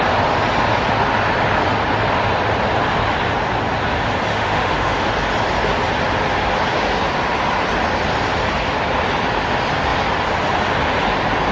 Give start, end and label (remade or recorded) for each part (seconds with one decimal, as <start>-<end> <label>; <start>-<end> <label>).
0.0-4.3 recorded; 4.3-5.1 remade; 5.1-11.5 recorded